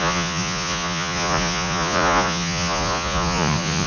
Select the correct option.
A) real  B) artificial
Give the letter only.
B